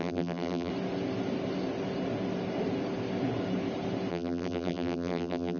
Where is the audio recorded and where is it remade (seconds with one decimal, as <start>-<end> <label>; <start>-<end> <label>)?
0.0-0.7 remade; 0.7-4.1 recorded; 4.1-5.6 remade

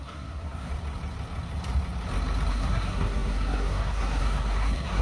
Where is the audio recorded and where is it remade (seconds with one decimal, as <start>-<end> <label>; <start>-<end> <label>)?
0.0-0.7 remade; 0.7-2.5 recorded; 2.5-5.0 remade

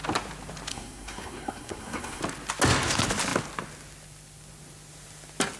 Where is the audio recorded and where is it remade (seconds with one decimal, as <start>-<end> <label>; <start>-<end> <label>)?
0.0-0.7 recorded; 0.7-2.2 remade; 2.2-5.6 recorded

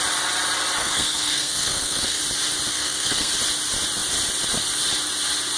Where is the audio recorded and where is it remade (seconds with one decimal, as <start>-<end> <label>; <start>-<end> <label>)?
0.0-0.8 recorded; 0.8-2.2 remade; 2.2-2.7 recorded; 2.7-3.3 remade; 3.3-5.6 recorded

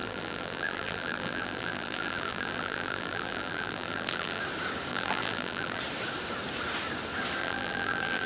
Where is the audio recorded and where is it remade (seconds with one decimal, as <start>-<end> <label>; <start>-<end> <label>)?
0.0-4.4 remade; 4.4-4.9 recorded; 4.9-5.8 remade; 5.8-7.4 recorded; 7.4-8.3 remade